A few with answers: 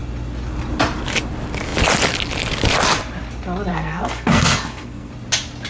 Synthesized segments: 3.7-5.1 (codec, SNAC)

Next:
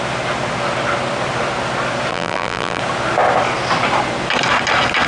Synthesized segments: 2.1-2.8 (vocoder, BigVGAN v2)

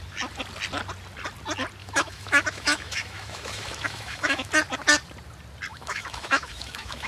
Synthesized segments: 1.8-4.5 (autoencoder, DAC-VAE); 5.7-7.1

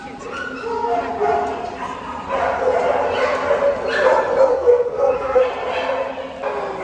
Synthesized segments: 4.5-5.4 (codec, SNAC)

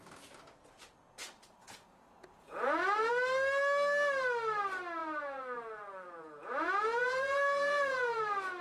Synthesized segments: 1.6-3.1 (vocoder, Vocos); 5.0-8.2

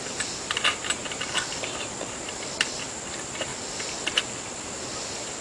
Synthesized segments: 3.5-4.2 (vocoder, BigVGAN v2)

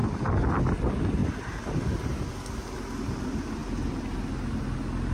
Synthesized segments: none

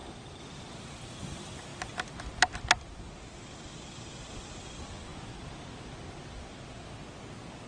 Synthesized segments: 0.0-0.6 (vocoder, BigVGAN v2); 5.1-6.4